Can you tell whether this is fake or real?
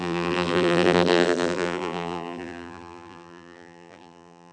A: fake